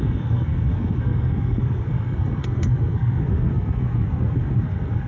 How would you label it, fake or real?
fake